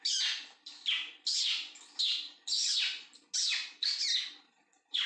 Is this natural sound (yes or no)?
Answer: yes